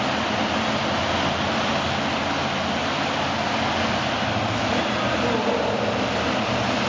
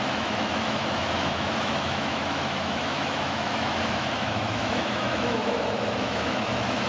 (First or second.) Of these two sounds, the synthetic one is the second